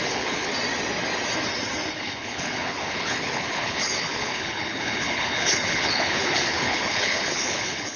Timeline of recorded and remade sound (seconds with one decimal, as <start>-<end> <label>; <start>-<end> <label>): 0.0-0.5 remade; 0.5-2.0 recorded; 2.0-8.0 remade